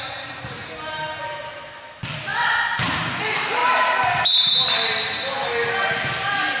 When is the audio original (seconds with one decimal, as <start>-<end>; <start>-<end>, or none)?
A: 0.0-6.6